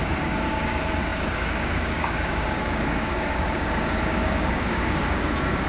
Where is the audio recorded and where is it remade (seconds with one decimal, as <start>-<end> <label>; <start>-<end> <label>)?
0.0-5.7 remade